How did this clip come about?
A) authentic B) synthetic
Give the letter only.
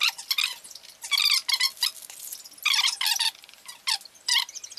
A